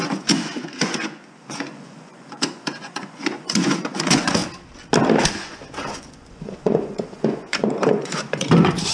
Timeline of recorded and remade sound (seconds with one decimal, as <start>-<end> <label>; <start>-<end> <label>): 0.0-4.4 remade; 4.4-5.3 recorded; 5.3-8.9 remade